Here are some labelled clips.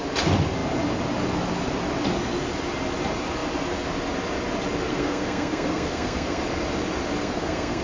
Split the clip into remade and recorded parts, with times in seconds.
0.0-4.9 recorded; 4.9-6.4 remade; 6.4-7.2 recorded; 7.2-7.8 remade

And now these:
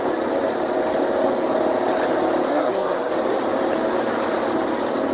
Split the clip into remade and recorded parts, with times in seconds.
0.0-2.5 recorded; 2.5-3.1 remade; 3.1-5.1 recorded

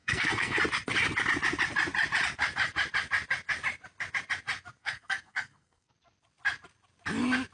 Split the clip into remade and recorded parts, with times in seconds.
0.0-0.6 remade; 0.6-4.8 recorded; 4.8-5.9 remade; 5.9-7.5 recorded

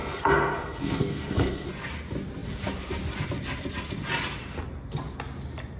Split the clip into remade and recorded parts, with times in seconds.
0.0-1.7 remade; 1.7-5.8 recorded

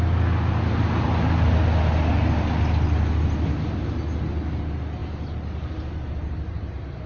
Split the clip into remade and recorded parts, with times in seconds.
0.0-7.1 recorded